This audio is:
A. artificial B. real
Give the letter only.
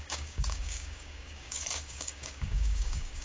A